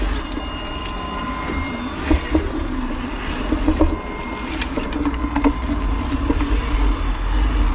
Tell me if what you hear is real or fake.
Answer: real